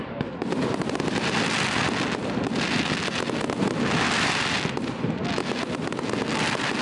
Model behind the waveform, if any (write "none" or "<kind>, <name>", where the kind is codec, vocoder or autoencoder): none